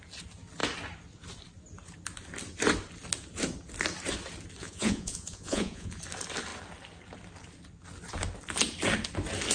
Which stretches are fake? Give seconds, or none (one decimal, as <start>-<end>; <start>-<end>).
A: 4.6-6.0